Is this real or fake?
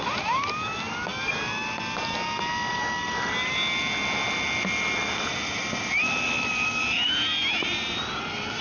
real